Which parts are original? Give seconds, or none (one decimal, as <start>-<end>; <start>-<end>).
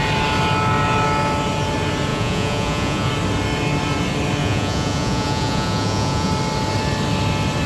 0.0-2.1; 3.1-4.4; 6.3-7.7